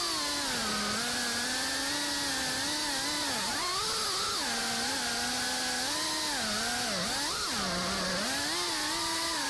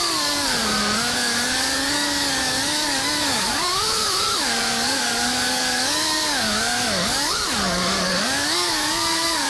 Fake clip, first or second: second